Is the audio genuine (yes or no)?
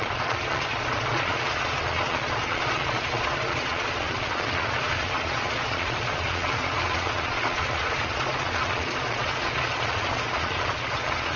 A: no